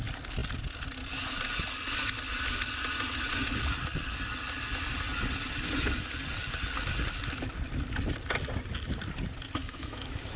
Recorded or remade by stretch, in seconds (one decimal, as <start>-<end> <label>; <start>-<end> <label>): 0.0-9.6 recorded; 9.6-10.4 remade